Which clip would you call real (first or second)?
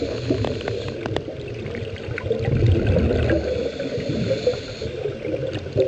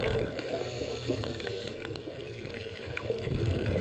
first